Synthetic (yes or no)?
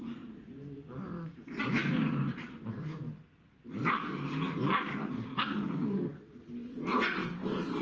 yes